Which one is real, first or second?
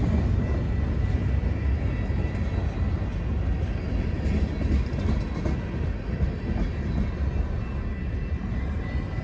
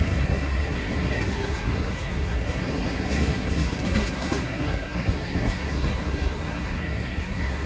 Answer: first